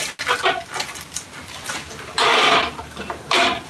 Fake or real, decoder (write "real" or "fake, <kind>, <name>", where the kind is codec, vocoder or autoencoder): real